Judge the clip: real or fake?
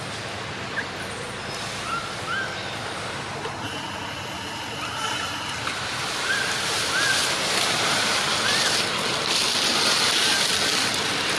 real